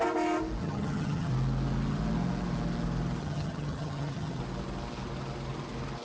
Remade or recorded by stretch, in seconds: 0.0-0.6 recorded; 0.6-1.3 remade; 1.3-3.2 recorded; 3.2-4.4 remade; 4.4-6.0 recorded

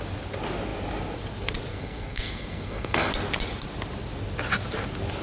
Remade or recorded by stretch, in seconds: 0.0-1.7 recorded; 1.7-3.1 remade; 3.1-5.2 recorded

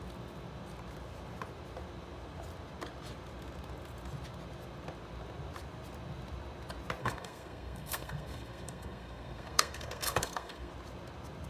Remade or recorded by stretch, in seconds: 0.0-7.0 recorded; 7.0-10.7 remade; 10.7-11.5 recorded

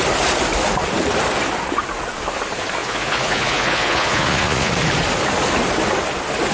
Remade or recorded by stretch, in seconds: 0.0-2.8 recorded; 2.8-4.7 remade; 4.7-6.5 recorded

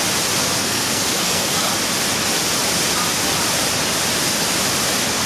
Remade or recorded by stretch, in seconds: 0.0-0.4 recorded; 0.4-1.7 remade; 1.7-5.3 recorded

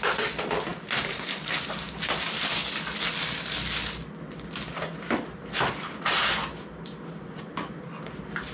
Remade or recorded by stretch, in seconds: 0.0-0.7 recorded; 0.7-1.5 remade; 1.5-8.5 recorded